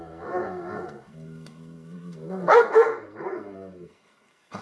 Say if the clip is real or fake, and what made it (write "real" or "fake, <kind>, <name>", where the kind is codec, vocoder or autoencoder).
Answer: fake, codec, SNAC